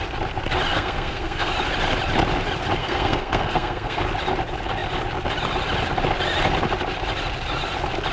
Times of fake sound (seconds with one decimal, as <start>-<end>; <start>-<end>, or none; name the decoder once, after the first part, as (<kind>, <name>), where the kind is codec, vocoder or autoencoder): 0.7-1.5 (codec, SNAC); 2.8-4.0

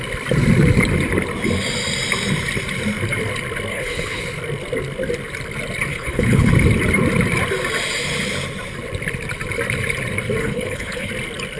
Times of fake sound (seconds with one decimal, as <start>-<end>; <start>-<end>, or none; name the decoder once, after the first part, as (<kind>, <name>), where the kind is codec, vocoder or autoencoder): 3.7-4.2 (codec, HILCodec); 5.9-6.5; 10.4-11.1

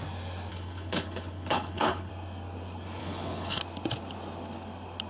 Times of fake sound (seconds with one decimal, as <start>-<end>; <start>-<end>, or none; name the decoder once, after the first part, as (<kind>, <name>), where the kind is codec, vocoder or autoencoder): 0.5-2.1 (codec, HILCodec); 3.0-3.6

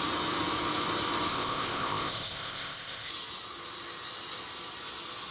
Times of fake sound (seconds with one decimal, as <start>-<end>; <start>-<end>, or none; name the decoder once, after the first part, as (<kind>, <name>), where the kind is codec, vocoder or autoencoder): 1.3-3.1 (codec, ZipCodec)

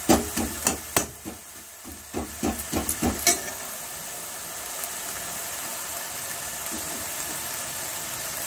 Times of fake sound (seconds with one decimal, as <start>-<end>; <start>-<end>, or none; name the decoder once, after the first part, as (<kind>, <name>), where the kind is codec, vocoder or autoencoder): none

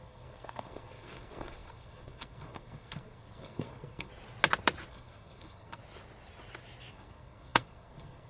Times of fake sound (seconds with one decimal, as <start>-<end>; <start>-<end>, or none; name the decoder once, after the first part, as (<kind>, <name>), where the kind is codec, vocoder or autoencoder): 0.0-4.1 (codec, SNAC); 4.9-5.8; 6.9-8.3

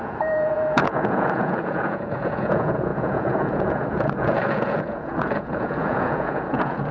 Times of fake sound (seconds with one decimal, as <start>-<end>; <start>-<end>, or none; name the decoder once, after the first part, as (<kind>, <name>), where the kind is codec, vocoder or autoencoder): 0.0-6.9 (vocoder, Vocos)

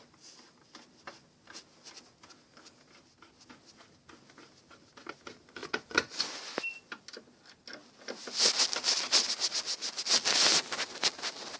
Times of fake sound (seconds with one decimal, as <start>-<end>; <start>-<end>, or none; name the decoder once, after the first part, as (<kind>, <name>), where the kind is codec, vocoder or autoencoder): 5.6-6.5 (vocoder, Vocos)